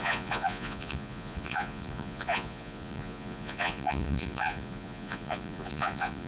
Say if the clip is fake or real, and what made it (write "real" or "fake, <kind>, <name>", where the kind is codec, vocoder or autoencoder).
fake, vocoder, Vocos